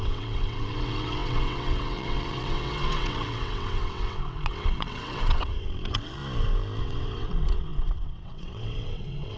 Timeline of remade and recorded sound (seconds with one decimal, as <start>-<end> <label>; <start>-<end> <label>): 0.0-6.2 remade; 6.2-6.8 recorded; 6.8-9.4 remade